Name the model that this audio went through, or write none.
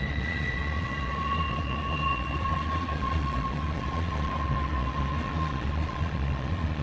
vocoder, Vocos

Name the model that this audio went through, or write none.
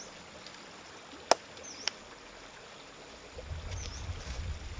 none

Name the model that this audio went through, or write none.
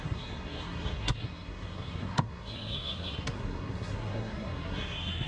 codec, SNAC